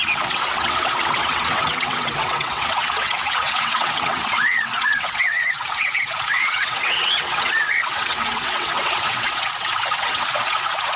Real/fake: fake